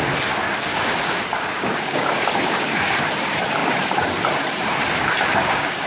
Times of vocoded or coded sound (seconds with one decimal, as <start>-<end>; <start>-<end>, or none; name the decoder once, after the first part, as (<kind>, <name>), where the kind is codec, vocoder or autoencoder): 0.7-3.1 (codec, DAC); 5.3-5.9